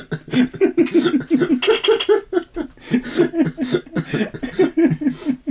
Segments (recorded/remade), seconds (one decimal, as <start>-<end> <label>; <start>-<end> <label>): 0.0-5.5 recorded

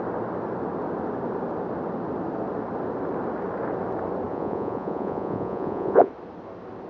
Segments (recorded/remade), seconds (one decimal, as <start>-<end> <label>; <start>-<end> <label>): 0.0-4.3 recorded; 4.3-6.1 remade; 6.1-6.9 recorded

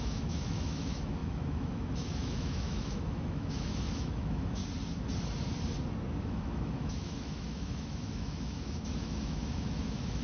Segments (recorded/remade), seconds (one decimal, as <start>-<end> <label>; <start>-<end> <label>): 0.0-4.6 remade; 4.6-6.2 recorded; 6.2-10.2 remade

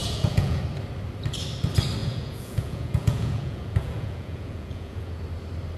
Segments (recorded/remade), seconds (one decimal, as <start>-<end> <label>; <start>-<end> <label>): 0.0-0.6 remade; 0.6-2.0 recorded; 2.0-5.2 remade; 5.2-5.8 recorded

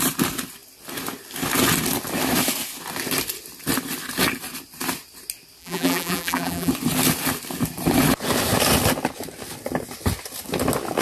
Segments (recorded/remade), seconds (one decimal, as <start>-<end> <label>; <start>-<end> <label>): 0.0-5.6 recorded; 5.6-6.7 remade; 6.7-11.0 recorded

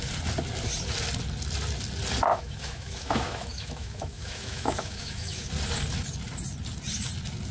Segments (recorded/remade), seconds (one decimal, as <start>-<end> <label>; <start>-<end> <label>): 0.0-2.3 recorded; 2.3-5.5 remade; 5.5-7.5 recorded

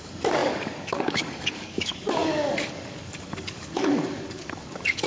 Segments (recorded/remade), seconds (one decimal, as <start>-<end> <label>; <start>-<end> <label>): 0.0-5.1 remade